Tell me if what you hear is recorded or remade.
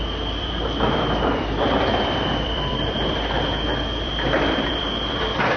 remade